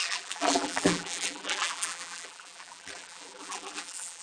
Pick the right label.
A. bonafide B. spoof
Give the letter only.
B